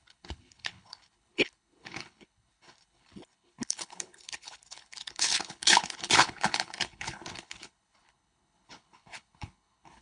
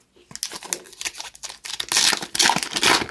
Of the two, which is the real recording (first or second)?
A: second